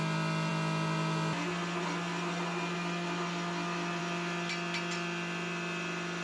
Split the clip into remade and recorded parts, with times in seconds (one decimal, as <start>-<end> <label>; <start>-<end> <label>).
0.0-6.2 recorded